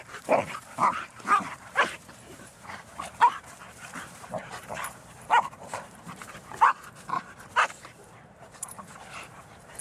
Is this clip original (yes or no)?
no